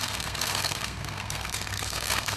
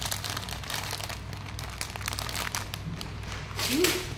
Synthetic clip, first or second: first